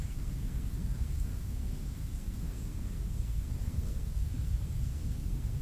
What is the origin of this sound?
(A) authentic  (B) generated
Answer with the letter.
B